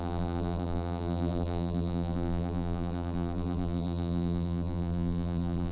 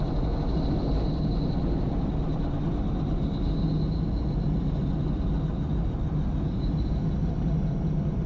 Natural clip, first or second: second